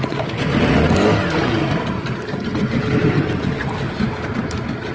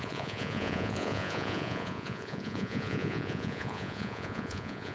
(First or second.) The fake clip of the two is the second